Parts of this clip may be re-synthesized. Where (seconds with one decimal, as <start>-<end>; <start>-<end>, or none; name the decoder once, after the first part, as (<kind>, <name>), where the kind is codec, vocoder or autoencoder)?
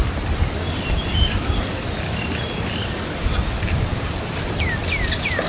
none